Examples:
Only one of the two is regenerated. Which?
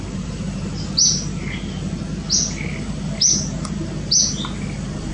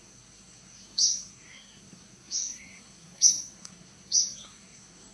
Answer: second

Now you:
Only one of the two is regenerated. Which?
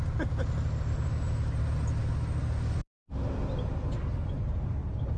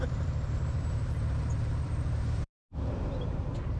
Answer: second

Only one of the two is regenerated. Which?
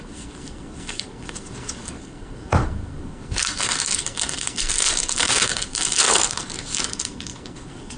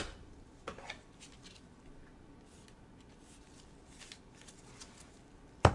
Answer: first